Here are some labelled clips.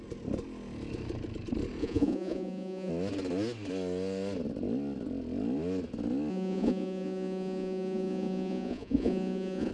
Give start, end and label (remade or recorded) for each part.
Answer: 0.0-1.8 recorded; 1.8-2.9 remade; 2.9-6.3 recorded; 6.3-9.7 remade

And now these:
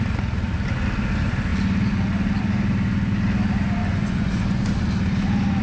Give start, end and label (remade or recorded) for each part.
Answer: 0.0-3.8 recorded; 3.8-4.7 remade; 4.7-5.6 recorded

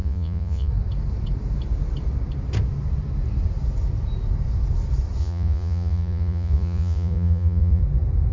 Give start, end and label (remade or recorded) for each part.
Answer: 0.0-0.7 remade; 0.7-5.2 recorded; 5.2-7.8 remade; 7.8-8.3 recorded

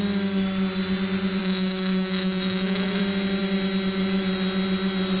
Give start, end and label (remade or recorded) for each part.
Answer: 0.0-1.4 recorded; 1.4-3.0 remade; 3.0-5.2 recorded

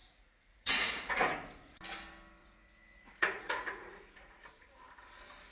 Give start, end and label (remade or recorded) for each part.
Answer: 0.0-1.8 remade; 1.8-2.4 recorded; 2.4-4.4 remade; 4.4-5.5 recorded